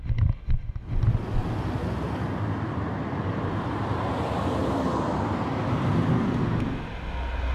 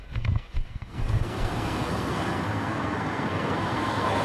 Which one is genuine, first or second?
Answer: first